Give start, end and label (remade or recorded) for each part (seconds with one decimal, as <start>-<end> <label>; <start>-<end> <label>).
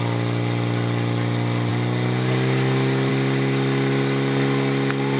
0.0-5.2 recorded